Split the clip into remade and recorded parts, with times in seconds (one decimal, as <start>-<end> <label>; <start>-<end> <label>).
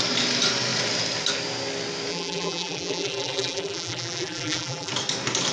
0.0-2.1 recorded; 2.1-4.9 remade; 4.9-5.5 recorded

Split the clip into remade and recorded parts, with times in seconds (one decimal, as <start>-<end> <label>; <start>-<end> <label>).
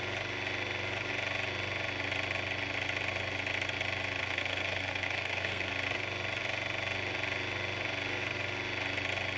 0.0-4.2 recorded; 4.2-5.7 remade; 5.7-9.4 recorded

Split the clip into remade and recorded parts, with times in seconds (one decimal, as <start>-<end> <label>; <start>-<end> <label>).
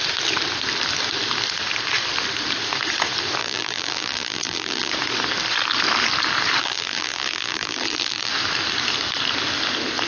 0.0-3.4 recorded; 3.4-4.9 remade; 4.9-6.6 recorded; 6.6-8.3 remade; 8.3-10.1 recorded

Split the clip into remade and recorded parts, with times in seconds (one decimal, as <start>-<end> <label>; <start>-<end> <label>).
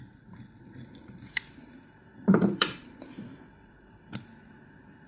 0.0-1.0 recorded; 1.0-4.1 remade; 4.1-5.1 recorded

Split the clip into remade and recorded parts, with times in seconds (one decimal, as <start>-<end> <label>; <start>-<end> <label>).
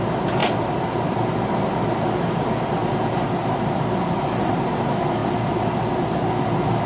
0.0-6.9 recorded